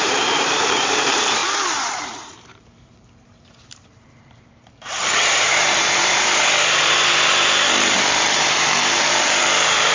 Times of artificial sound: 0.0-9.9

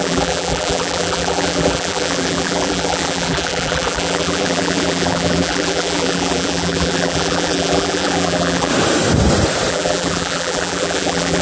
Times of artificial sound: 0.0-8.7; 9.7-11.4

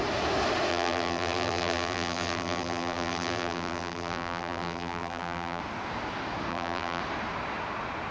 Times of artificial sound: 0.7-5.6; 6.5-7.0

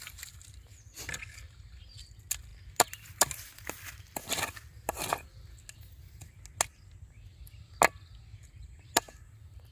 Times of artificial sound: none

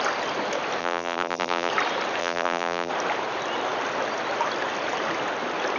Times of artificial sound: 0.8-1.7; 2.2-2.9

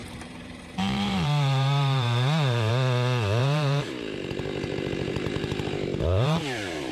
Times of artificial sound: 0.0-2.7; 3.4-6.9

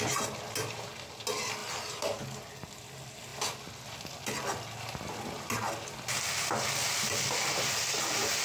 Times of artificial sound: 1.6-2.2

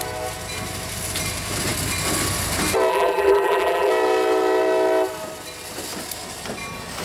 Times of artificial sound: 2.9-3.9